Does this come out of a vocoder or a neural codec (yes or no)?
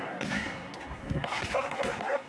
yes